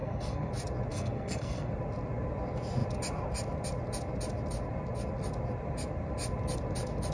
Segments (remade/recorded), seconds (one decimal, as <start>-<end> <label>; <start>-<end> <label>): 0.0-0.5 remade; 0.5-0.9 recorded; 0.9-1.7 remade; 1.7-7.1 recorded